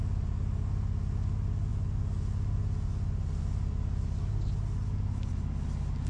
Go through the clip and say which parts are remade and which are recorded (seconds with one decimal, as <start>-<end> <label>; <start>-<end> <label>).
0.0-6.1 recorded